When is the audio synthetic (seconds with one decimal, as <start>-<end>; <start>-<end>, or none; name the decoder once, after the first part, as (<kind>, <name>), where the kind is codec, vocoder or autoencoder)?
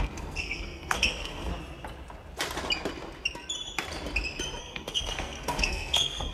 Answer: 0.0-1.5 (codec, SNAC); 4.6-6.3